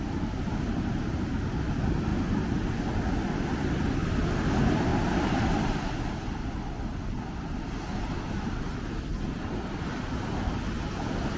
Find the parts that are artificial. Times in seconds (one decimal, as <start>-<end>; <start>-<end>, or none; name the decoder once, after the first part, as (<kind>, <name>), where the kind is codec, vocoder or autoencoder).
none